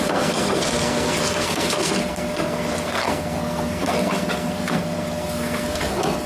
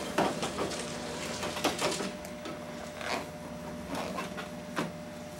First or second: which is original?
second